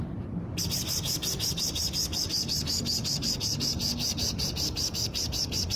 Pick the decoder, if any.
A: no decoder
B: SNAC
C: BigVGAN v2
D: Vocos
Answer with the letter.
A